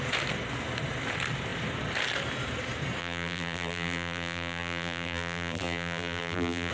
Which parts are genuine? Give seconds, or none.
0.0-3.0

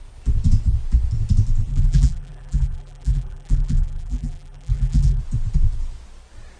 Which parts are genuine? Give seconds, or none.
0.0-1.7; 5.2-6.6

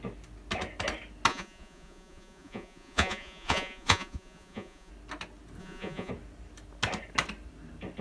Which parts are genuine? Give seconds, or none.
0.0-1.3; 4.9-5.6; 6.1-8.0

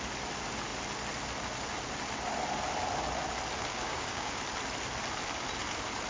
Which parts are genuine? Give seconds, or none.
0.0-3.7; 4.4-6.1

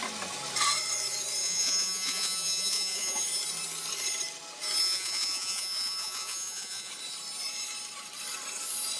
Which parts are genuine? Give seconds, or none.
0.0-1.4; 3.2-4.8; 6.9-9.0

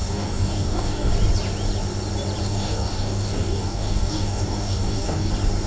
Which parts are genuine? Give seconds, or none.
1.1-2.4; 5.3-5.7

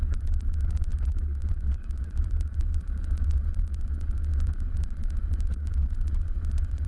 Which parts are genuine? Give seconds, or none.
none